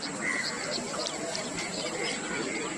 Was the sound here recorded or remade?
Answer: recorded